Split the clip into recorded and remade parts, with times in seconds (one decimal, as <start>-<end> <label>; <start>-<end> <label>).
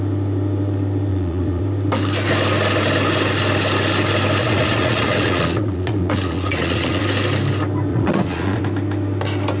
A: 0.0-1.1 recorded; 1.1-1.6 remade; 1.6-4.4 recorded; 4.4-7.0 remade; 7.0-7.9 recorded; 7.9-8.6 remade; 8.6-9.6 recorded